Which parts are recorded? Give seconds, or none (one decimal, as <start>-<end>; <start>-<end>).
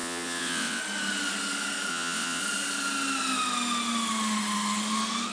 0.8-1.9; 2.4-5.3